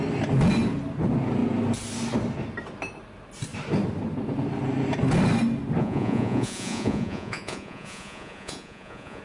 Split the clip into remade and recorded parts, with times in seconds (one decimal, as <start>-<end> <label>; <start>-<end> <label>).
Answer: 0.0-5.8 recorded; 5.8-9.2 remade